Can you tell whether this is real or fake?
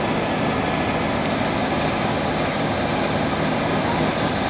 real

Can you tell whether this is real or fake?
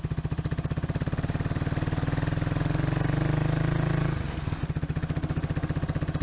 real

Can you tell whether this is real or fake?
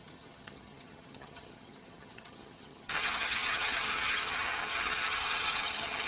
fake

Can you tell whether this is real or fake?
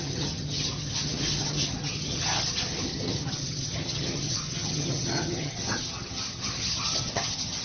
fake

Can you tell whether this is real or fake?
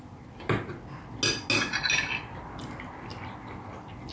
real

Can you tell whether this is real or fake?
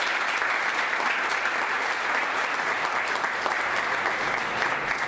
real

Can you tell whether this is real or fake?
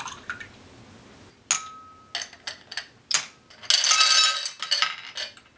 real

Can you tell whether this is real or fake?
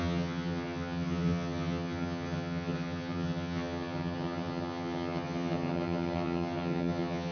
fake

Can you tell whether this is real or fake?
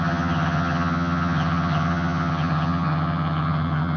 fake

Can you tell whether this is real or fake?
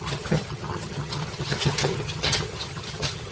fake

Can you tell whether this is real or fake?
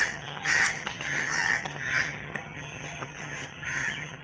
fake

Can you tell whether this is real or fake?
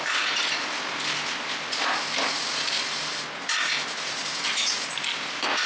real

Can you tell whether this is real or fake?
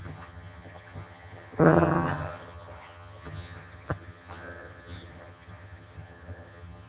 fake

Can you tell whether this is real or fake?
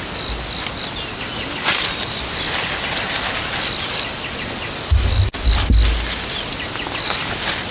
real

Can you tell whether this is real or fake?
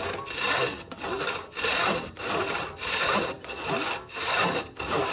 real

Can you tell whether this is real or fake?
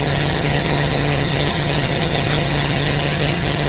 fake